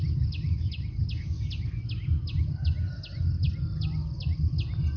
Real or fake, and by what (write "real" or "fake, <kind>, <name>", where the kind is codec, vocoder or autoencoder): real